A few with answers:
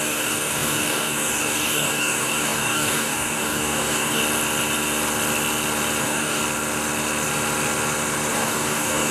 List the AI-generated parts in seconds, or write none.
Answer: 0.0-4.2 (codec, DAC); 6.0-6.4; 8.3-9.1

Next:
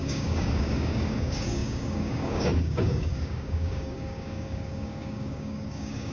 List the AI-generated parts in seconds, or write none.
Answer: 0.0-6.1 (codec, DAC)

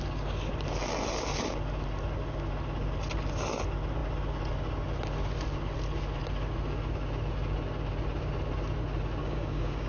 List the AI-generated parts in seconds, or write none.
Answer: 9.2-9.9 (codec, DAC)

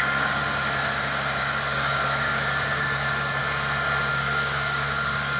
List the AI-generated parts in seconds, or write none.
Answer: 0.0-0.4 (codec, DAC); 1.4-3.4; 4.1-5.4

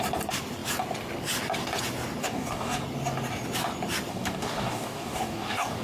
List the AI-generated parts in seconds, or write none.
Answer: 2.2-2.8 (codec, DAC); 4.1-5.8

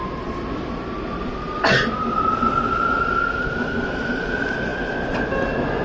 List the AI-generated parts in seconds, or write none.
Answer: none

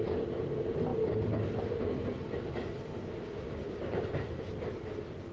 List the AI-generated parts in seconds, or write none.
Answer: 2.9-4.0 (codec, DAC)